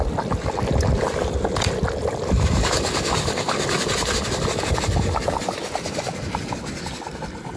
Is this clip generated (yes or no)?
no